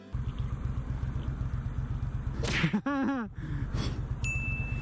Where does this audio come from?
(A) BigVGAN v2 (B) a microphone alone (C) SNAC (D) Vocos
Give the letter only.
B